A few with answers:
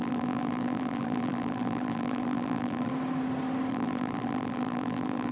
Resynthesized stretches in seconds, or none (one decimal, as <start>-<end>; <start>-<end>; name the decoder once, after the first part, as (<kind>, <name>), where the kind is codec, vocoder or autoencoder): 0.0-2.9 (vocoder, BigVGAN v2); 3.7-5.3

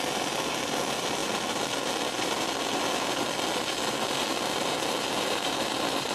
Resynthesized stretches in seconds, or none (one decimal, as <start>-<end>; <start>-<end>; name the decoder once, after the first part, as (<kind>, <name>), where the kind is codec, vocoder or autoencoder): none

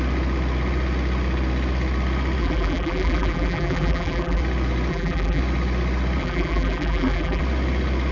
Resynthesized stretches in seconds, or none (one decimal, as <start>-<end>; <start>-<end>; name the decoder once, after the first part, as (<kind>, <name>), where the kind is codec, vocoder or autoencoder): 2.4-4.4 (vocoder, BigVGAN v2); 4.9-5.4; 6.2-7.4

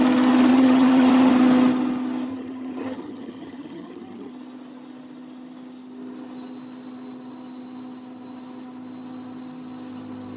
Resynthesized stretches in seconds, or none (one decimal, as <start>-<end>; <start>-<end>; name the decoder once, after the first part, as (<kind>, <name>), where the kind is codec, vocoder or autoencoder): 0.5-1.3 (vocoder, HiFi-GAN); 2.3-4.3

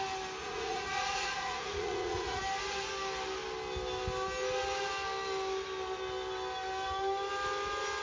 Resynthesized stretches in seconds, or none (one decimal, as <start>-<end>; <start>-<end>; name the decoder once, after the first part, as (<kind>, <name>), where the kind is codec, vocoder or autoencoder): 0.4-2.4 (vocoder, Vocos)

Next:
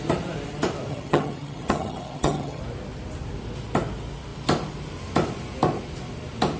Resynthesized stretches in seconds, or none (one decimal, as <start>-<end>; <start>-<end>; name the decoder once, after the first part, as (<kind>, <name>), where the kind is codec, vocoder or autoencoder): 0.9-2.6 (vocoder, HiFi-GAN)

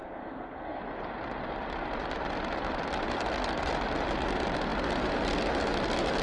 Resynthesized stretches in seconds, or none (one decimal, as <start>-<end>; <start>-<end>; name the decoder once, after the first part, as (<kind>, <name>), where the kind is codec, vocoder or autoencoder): 0.0-0.8 (codec, SNAC)

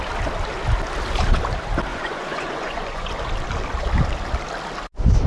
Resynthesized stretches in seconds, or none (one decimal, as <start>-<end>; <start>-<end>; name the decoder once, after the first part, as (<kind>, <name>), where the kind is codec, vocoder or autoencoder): 1.9-3.1 (vocoder, Vocos)